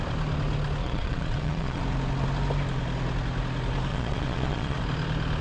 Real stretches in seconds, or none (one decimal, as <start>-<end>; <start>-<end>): 0.0-0.8; 1.8-3.9; 4.8-5.4